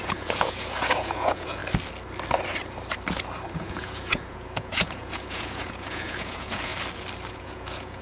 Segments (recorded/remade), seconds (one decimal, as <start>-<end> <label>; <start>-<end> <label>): 0.0-1.6 remade; 1.6-3.6 recorded; 3.6-6.7 remade; 6.7-7.3 recorded; 7.3-8.0 remade